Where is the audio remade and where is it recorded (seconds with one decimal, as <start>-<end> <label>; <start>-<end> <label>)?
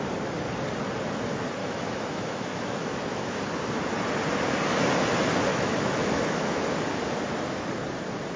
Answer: 0.0-1.6 recorded; 1.6-3.4 remade; 3.4-5.5 recorded; 5.5-6.6 remade; 6.6-8.4 recorded